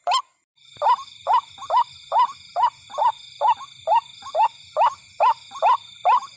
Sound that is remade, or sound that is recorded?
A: recorded